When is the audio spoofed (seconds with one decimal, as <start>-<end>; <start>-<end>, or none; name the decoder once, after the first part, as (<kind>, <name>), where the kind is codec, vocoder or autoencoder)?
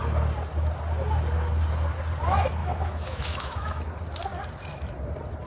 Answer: 2.6-3.8 (autoencoder, DAC-VAE)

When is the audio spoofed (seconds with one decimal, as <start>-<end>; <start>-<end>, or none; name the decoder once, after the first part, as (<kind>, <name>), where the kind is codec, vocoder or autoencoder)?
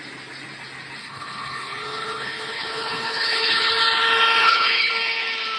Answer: 1.0-3.7 (codec, HILCodec); 4.4-4.9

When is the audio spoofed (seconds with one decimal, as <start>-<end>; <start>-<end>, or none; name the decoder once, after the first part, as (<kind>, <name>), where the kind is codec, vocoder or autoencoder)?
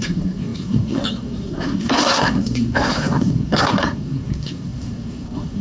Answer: 0.0-5.6 (codec, SNAC)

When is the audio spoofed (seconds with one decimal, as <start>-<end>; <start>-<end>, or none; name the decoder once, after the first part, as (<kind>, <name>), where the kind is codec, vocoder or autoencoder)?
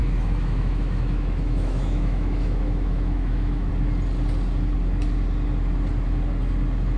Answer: 0.0-3.7 (autoencoder, DAC-VAE)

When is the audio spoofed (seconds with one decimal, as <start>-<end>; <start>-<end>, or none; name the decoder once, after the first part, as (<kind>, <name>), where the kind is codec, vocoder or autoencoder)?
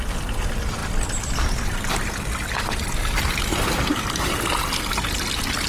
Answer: none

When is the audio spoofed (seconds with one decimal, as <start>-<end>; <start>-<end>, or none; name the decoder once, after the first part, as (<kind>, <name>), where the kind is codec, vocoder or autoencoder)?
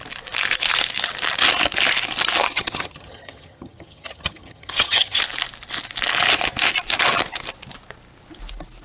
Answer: 2.5-5.2 (vocoder, HiFi-GAN)